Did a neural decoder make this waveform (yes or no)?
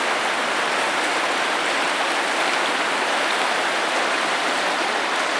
no